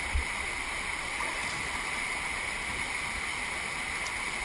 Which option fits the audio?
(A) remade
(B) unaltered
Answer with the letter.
B